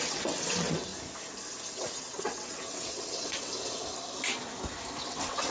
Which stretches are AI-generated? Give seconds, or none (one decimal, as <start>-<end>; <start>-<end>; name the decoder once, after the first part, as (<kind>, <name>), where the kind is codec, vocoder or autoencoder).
0.0-0.9 (vocoder, WaveNeXt); 1.7-3.5; 5.0-5.5